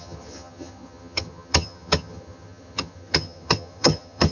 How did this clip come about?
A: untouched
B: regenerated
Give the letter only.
B